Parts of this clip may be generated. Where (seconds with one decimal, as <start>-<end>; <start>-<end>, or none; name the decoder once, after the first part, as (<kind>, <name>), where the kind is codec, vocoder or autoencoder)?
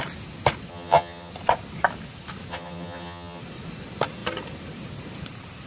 0.7-1.3 (vocoder, HiFi-GAN); 2.5-3.4